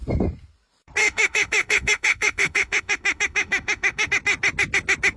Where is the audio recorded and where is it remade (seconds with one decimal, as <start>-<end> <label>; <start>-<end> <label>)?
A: 0.0-1.0 recorded; 1.0-4.1 remade; 4.1-5.2 recorded